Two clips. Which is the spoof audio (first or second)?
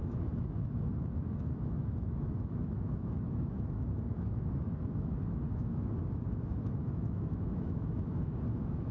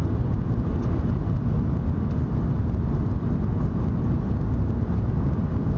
first